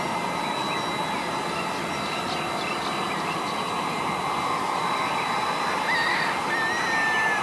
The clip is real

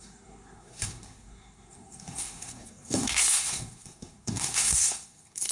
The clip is fake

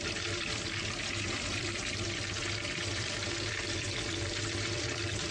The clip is fake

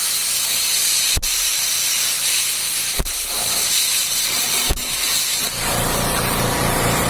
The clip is fake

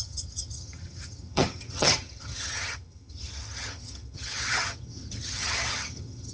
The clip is fake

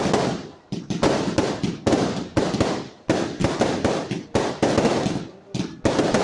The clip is real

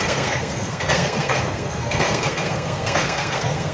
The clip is fake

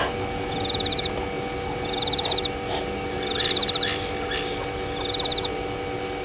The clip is real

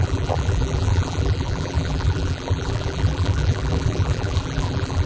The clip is fake